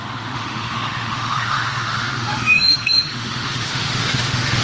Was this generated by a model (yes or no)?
yes